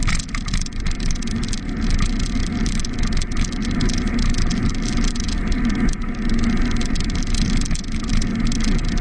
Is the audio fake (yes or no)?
no